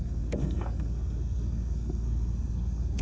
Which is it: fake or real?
fake